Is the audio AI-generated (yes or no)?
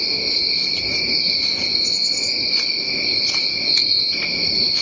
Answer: no